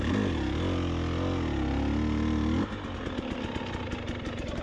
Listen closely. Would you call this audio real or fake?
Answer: real